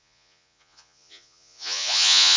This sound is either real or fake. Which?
fake